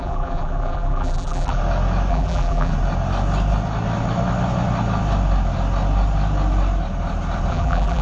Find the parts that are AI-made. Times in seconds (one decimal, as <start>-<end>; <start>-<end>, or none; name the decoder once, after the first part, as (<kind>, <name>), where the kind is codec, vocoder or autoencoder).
0.0-1.6 (vocoder, BigVGAN v2); 2.1-2.7; 7.5-8.0